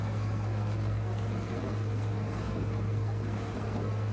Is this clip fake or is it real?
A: fake